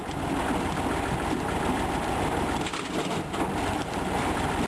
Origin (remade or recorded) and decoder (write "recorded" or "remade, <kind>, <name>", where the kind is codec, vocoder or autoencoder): remade, vocoder, BigVGAN v2